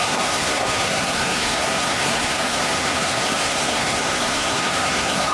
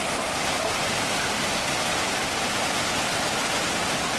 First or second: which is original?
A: second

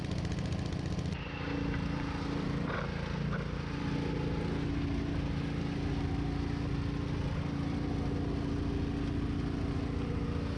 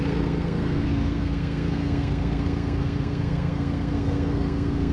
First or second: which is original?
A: first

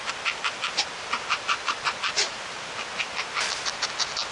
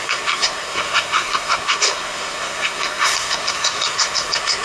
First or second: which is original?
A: first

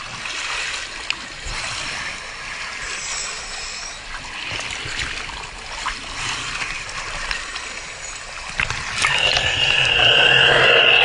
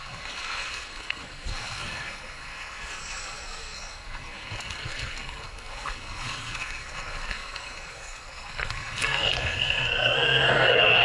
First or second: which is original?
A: first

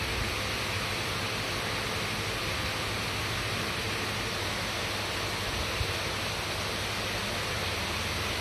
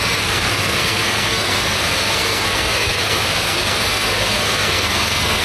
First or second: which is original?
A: first